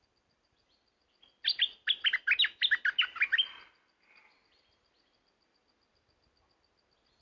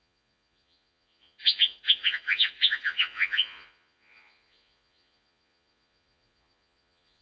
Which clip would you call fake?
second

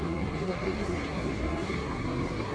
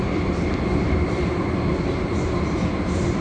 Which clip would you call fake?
first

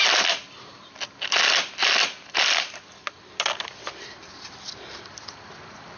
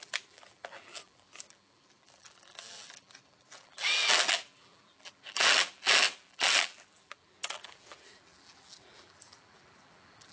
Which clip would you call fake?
second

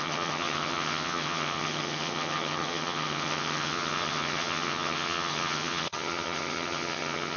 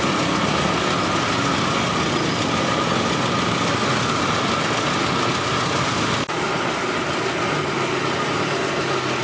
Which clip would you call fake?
first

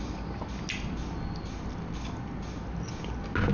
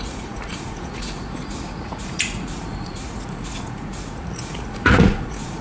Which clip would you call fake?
second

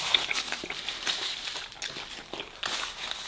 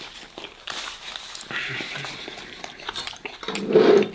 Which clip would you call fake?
second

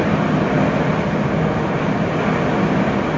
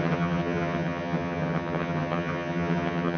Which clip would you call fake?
second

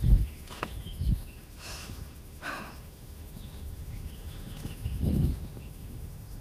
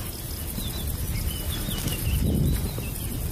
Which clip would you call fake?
first